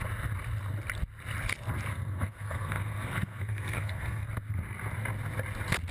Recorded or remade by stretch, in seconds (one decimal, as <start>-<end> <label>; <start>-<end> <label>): 0.0-1.9 recorded; 1.9-4.3 remade; 4.3-5.9 recorded